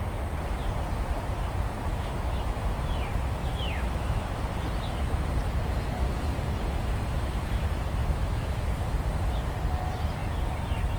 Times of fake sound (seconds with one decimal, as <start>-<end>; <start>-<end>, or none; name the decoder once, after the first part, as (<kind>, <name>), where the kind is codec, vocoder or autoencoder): 1.9-2.6 (autoencoder, DAC-VAE); 3.5-4.4; 8.0-8.6